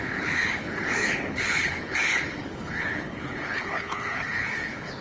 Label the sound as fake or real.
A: fake